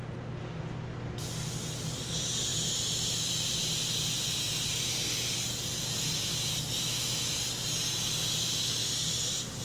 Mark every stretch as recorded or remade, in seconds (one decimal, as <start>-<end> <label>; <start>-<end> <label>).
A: 0.0-2.5 recorded; 2.5-7.3 remade; 7.3-8.8 recorded; 8.8-9.6 remade